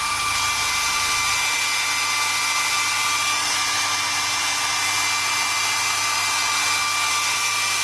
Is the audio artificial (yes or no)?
no